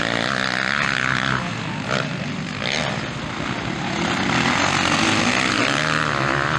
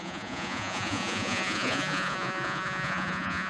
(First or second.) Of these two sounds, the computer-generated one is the second